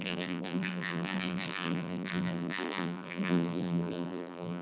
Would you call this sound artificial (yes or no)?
yes